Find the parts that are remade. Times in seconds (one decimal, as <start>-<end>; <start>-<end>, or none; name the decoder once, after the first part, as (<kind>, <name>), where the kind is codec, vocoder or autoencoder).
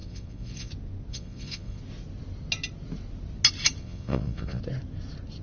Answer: 0.0-0.7 (vocoder, Vocos); 1.1-1.8; 3.8-4.6